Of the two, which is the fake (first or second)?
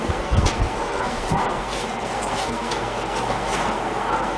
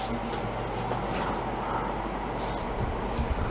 first